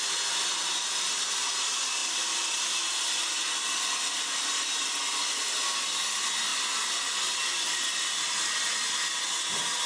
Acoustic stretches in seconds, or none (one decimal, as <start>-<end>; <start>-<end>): 0.0-9.9